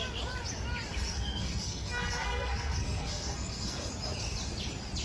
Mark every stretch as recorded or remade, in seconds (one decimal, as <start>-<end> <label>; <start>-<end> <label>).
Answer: 0.0-0.9 recorded; 0.9-3.9 remade; 3.9-5.0 recorded